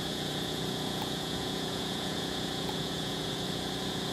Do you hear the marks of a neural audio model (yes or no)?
yes